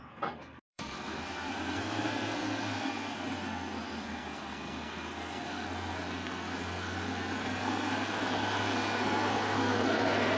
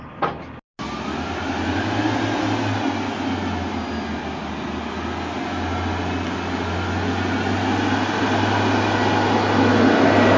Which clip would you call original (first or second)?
second